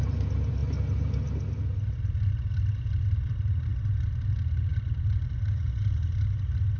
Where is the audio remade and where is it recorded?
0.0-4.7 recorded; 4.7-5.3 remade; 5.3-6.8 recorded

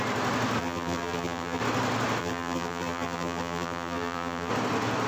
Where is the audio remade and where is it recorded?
0.0-0.6 recorded; 0.6-1.6 remade; 1.6-2.2 recorded; 2.2-4.5 remade; 4.5-5.1 recorded

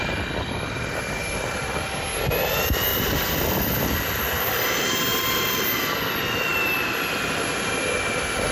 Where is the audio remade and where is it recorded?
0.0-2.9 recorded; 2.9-4.6 remade; 4.6-5.1 recorded; 5.1-5.6 remade; 5.6-8.5 recorded

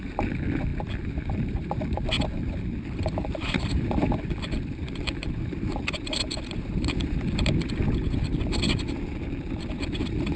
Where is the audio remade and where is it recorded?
0.0-10.4 remade

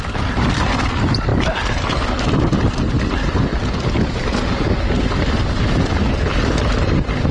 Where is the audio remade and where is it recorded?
0.0-7.3 recorded